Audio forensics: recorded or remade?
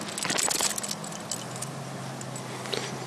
recorded